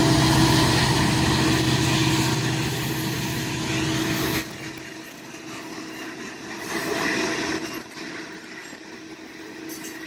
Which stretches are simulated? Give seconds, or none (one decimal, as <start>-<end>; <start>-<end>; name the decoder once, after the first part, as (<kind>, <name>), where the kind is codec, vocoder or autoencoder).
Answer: none